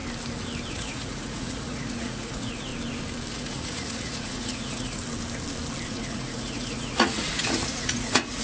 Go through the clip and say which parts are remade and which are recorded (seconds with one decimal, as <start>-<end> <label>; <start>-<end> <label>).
0.0-0.7 recorded; 0.7-2.7 remade; 2.7-3.3 recorded; 3.3-5.0 remade; 5.0-5.9 recorded; 5.9-8.4 remade